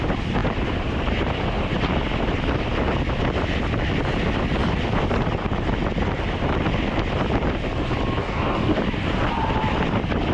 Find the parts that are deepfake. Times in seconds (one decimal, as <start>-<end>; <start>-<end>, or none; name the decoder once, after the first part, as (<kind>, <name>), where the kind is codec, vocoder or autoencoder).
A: 8.2-8.8 (codec, DAC)